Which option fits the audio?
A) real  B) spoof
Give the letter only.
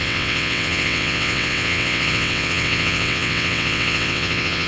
B